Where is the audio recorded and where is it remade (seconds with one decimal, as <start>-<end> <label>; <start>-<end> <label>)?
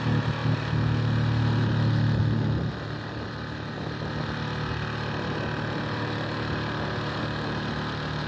0.0-8.3 recorded